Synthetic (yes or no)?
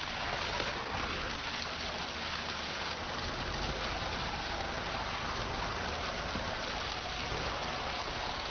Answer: no